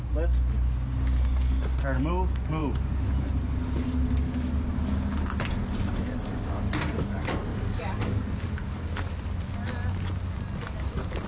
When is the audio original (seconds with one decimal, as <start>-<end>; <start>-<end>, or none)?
0.0-7.5; 9.1-11.3